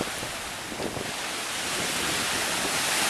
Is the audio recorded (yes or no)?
yes